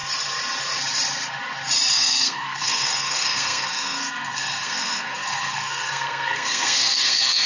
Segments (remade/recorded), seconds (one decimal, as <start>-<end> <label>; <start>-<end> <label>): 0.0-1.9 recorded; 1.9-7.5 remade